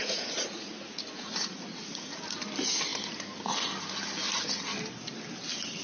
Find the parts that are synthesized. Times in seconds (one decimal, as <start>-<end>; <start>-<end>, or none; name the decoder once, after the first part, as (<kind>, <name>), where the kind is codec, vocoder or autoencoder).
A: 0.0-2.2 (vocoder, Vocos)